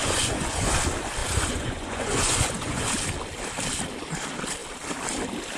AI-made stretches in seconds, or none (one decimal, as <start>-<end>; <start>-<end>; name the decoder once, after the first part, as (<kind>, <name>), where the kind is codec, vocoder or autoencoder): 0.0-0.7 (vocoder, Vocos); 1.2-2.9